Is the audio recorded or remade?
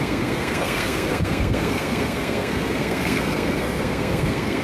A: remade